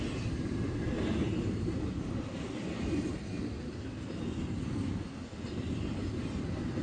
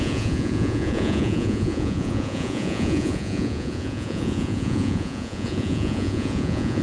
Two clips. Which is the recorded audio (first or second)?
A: first